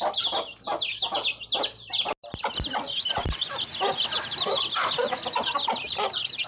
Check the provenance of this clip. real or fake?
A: real